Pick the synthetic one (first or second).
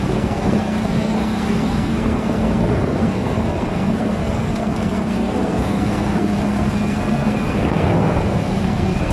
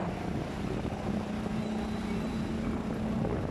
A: first